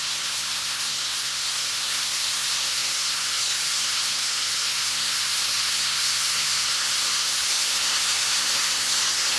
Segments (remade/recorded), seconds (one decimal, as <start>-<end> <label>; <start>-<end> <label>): 0.0-9.4 remade